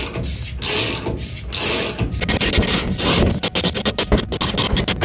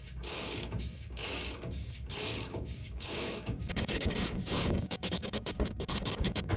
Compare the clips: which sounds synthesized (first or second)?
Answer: second